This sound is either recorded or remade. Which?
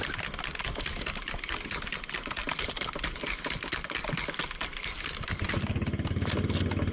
recorded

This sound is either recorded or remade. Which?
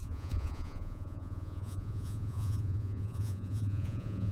remade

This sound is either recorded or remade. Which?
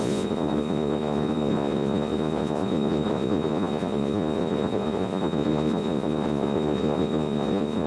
remade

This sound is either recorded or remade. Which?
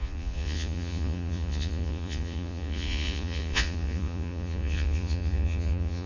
remade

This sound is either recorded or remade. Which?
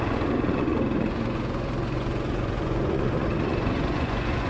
remade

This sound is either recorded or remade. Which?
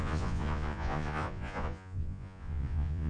remade